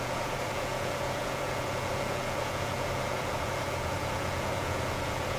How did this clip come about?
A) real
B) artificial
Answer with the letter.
B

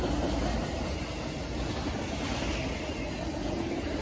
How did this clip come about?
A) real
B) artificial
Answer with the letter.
A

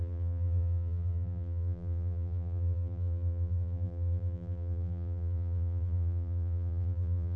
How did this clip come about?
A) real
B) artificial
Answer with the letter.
B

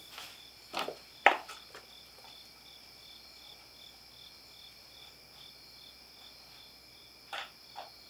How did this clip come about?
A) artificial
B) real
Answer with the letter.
B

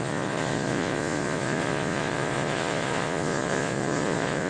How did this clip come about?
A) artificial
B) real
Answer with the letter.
A